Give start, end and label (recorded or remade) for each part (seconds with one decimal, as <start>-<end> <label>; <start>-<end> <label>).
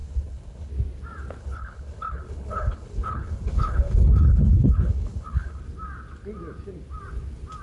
0.0-0.7 remade; 0.7-1.4 recorded; 1.4-5.6 remade; 5.6-7.6 recorded